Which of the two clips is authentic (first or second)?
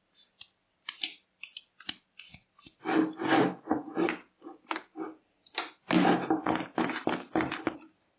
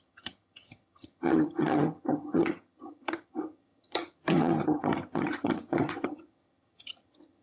first